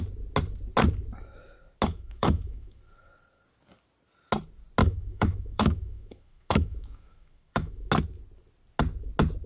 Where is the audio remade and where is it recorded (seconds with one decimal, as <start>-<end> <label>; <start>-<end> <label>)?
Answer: 0.0-1.9 recorded; 1.9-2.8 remade; 2.8-4.8 recorded; 4.8-7.9 remade; 7.9-9.5 recorded